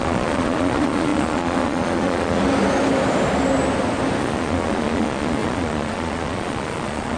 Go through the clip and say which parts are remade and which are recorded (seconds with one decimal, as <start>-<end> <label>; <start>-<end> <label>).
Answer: 0.0-2.4 remade; 2.4-4.2 recorded; 4.2-7.2 remade